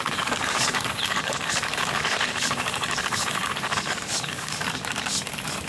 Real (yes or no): no